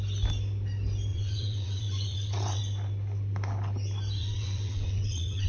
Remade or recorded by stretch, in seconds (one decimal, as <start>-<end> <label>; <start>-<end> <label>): 0.0-1.1 recorded; 1.1-2.6 remade; 2.6-4.2 recorded; 4.2-5.5 remade